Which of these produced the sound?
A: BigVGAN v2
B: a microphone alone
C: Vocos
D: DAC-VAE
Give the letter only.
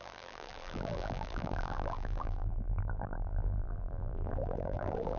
A